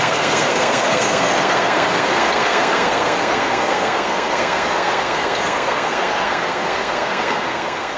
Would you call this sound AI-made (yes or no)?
yes